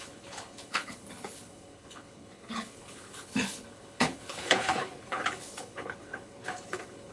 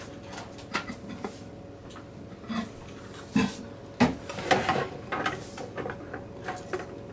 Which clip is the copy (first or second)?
first